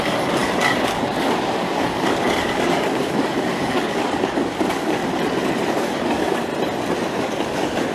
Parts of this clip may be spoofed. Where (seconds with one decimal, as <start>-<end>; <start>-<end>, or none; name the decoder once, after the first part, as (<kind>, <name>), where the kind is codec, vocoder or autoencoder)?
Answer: 0.0-5.0 (codec, DAC); 5.7-6.5; 7.2-7.9